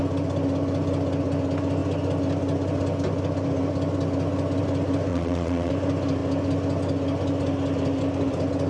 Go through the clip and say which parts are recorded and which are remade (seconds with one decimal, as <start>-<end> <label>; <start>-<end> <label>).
0.0-5.1 recorded; 5.1-5.7 remade; 5.7-8.7 recorded